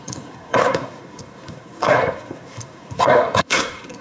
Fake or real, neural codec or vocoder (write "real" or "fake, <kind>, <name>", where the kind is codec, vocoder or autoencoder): fake, codec, SNAC